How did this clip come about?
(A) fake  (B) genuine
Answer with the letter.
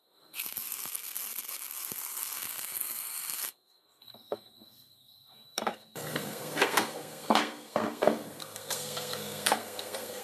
A